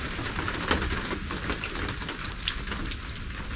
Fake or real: real